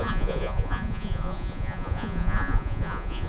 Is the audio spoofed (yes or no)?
yes